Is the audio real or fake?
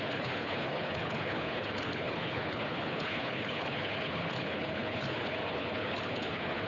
fake